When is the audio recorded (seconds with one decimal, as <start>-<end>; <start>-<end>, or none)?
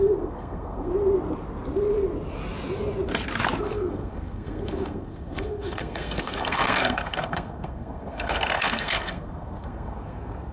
0.9-3.6